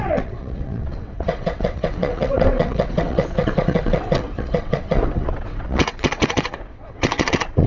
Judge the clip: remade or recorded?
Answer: remade